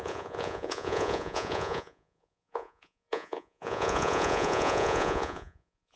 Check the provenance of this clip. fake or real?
fake